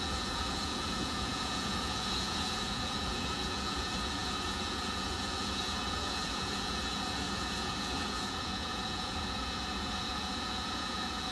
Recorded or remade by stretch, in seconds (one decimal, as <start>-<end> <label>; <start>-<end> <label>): 0.0-11.3 remade